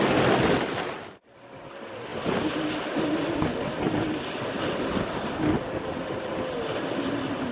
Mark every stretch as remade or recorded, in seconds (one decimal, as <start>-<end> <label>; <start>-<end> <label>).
0.0-7.5 recorded